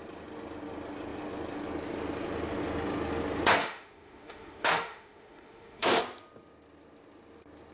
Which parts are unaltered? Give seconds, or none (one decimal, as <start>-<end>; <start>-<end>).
0.0-3.6; 6.0-7.7